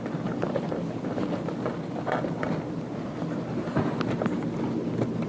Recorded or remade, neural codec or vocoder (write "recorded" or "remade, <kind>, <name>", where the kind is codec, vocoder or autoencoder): recorded